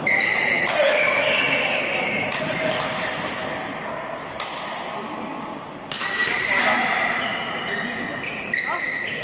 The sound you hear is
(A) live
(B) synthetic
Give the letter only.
A